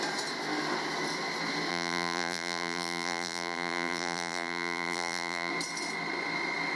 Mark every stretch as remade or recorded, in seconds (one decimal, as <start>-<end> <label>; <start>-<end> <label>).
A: 0.0-1.7 recorded; 1.7-5.5 remade; 5.5-6.8 recorded